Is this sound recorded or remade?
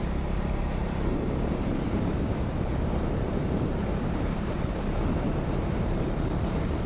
remade